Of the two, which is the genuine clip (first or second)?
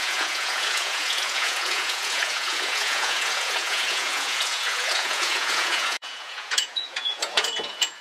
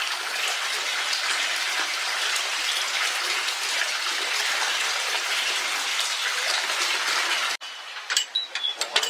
second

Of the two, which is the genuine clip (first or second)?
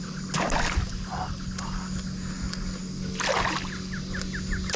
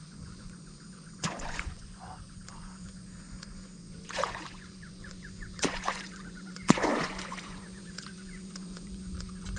first